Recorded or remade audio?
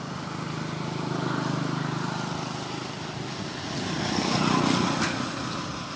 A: recorded